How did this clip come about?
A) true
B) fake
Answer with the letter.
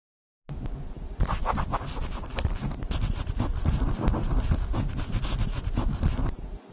A